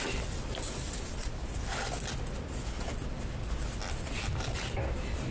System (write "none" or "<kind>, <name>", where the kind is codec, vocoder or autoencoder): none